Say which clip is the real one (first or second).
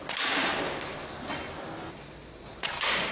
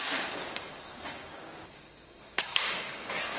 first